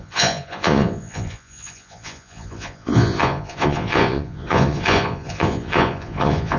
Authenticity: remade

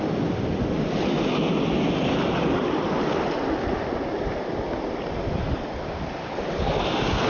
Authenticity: recorded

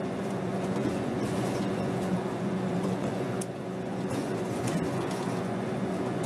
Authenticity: remade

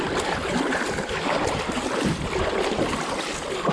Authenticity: recorded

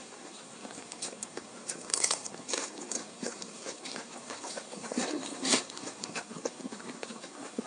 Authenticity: remade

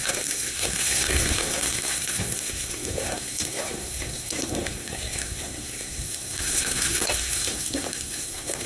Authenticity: remade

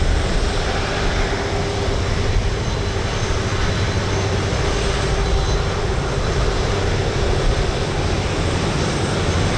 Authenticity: recorded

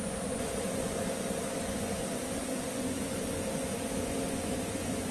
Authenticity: remade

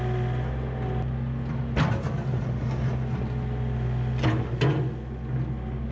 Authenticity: recorded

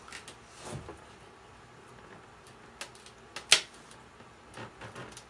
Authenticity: recorded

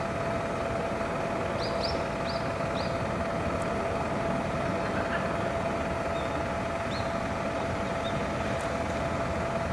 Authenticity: recorded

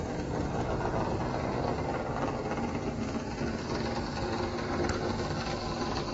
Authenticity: recorded